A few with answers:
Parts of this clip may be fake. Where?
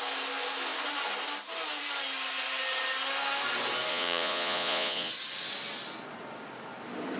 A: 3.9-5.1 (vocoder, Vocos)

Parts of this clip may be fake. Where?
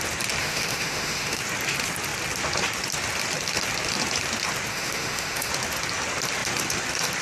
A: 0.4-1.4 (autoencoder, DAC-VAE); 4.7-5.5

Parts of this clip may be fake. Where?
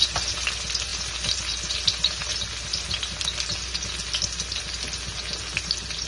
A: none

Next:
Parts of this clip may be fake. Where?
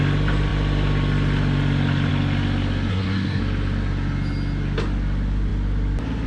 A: 2.9-3.4 (codec, SNAC)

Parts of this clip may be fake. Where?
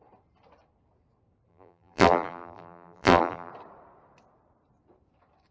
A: 1.5-3.5 (vocoder, BigVGAN v2)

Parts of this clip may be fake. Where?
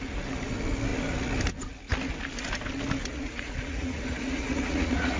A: 3.0-5.2 (vocoder, Vocos)